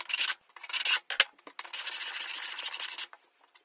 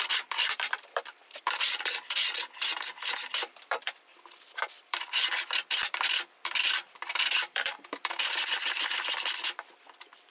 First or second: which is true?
first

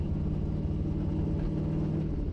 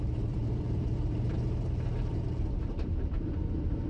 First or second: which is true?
first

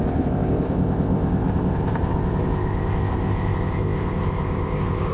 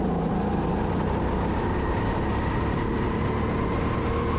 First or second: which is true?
second